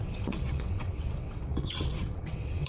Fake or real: fake